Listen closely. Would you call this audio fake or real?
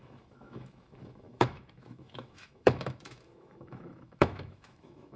fake